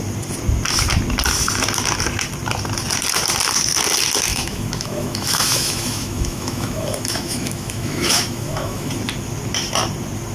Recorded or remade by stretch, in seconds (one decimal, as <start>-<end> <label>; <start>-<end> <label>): 0.0-4.3 recorded; 4.3-8.9 remade; 8.9-10.3 recorded